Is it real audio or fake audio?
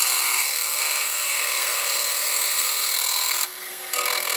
fake